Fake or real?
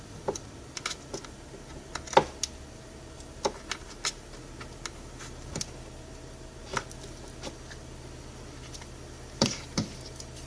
fake